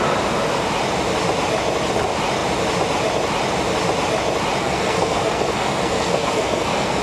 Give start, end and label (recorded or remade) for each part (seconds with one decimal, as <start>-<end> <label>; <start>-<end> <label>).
0.0-4.6 recorded; 4.6-7.0 remade